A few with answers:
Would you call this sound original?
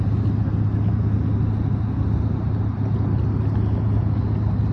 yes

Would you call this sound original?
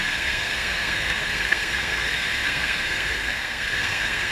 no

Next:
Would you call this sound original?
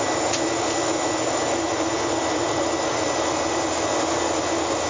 yes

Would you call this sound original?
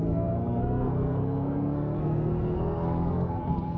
no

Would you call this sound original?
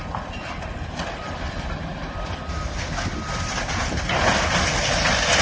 yes